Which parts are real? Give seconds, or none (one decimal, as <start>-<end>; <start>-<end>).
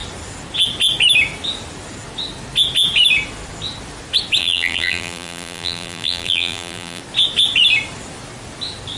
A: 0.0-4.4; 7.0-9.0